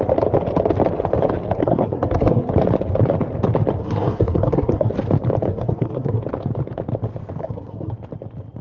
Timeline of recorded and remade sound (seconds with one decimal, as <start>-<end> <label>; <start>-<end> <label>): 0.0-1.6 recorded; 1.6-2.5 remade; 2.5-3.8 recorded; 3.8-4.9 remade; 4.9-5.5 recorded; 5.5-6.2 remade; 6.2-7.4 recorded; 7.4-7.9 remade; 7.9-8.6 recorded